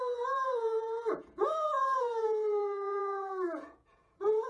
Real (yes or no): no